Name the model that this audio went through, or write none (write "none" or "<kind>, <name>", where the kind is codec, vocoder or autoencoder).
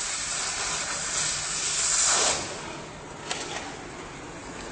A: none